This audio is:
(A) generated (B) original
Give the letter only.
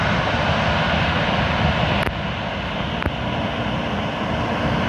B